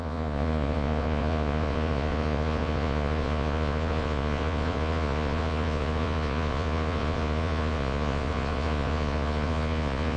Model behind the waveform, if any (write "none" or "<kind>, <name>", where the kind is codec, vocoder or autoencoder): vocoder, Vocos